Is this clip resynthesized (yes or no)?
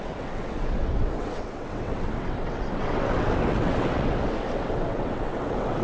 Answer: yes